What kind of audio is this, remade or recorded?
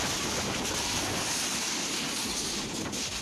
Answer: recorded